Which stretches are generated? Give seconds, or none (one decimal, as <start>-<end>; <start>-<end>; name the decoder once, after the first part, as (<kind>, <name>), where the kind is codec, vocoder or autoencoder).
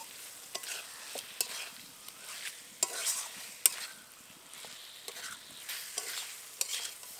3.0-3.6 (vocoder, BigVGAN v2)